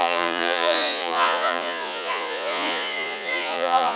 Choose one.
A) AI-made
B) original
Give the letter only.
A